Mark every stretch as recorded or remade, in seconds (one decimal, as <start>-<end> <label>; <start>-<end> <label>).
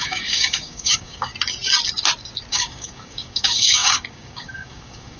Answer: 0.0-1.3 remade; 1.3-2.5 recorded; 2.5-5.2 remade